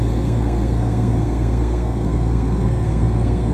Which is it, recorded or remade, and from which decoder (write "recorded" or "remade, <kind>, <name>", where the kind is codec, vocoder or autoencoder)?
remade, codec, SNAC